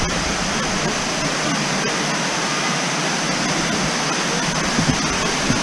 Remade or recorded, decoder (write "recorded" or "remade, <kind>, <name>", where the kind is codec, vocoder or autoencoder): recorded